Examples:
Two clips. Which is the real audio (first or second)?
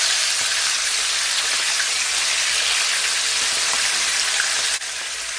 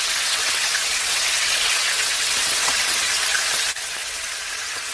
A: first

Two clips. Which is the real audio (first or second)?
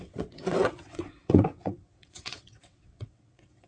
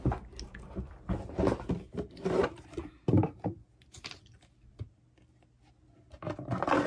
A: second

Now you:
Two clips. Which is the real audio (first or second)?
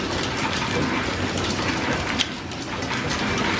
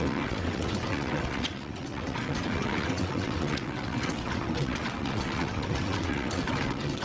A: first